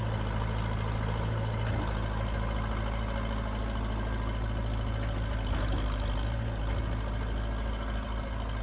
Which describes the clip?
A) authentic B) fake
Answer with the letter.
A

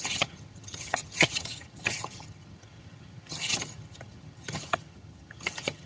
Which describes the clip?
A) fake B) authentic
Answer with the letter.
A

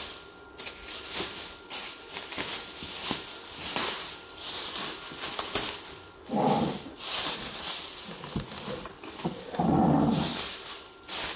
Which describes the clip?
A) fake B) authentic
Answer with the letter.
B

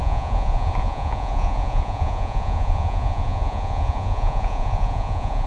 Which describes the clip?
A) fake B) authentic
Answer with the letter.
A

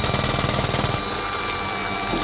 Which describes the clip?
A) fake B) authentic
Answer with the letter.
B